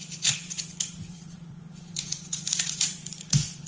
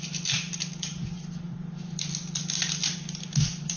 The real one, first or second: second